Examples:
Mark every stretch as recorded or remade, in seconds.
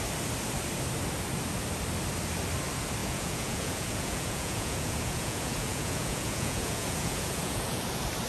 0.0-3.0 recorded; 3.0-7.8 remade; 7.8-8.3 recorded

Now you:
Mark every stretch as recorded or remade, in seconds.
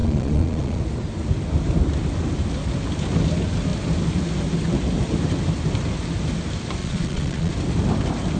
0.0-0.8 remade; 0.8-6.8 recorded; 6.8-7.5 remade; 7.5-8.4 recorded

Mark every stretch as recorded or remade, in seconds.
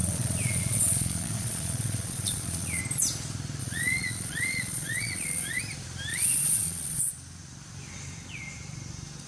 0.0-2.8 remade; 2.8-3.6 recorded; 3.6-5.6 remade; 5.6-6.1 recorded; 6.1-7.1 remade; 7.1-9.3 recorded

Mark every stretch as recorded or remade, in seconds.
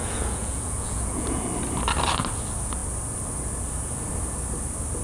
0.0-1.5 remade; 1.5-5.0 recorded